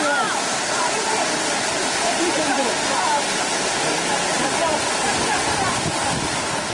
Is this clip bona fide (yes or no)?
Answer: yes